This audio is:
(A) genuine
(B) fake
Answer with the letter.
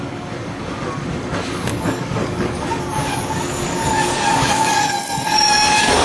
B